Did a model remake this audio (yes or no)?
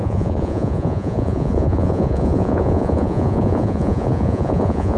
yes